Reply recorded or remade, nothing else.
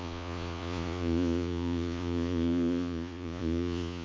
remade